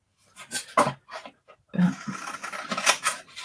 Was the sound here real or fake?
real